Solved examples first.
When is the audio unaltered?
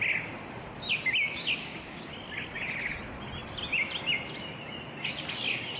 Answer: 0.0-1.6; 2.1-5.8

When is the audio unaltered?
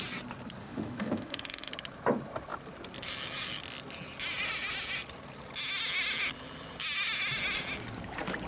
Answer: 0.0-0.6; 1.7-8.5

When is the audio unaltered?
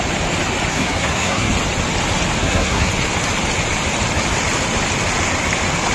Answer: 0.0-0.7; 1.5-2.4; 2.9-5.9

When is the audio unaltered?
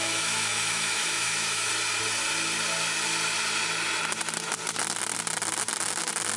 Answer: 1.7-6.4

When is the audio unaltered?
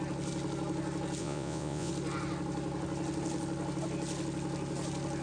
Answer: 0.0-1.2; 1.9-5.2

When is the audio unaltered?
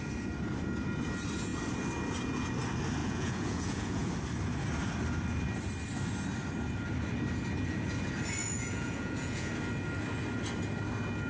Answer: 0.0-3.0; 4.1-8.4; 9.5-11.3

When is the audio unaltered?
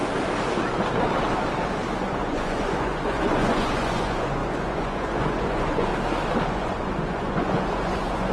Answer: 0.0-2.0; 5.9-6.5